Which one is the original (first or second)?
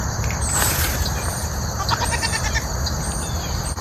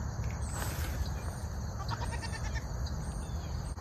second